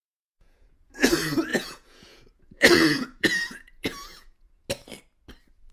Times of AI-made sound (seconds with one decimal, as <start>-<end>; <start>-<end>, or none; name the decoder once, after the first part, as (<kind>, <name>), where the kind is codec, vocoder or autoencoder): 0.0-1.1 (vocoder, Vocos); 1.5-4.7